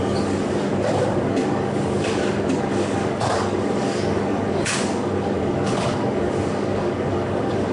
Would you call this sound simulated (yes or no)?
yes